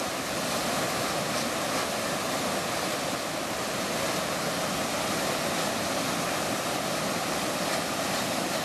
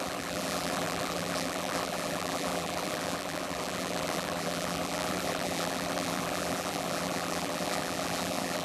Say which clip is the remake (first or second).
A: second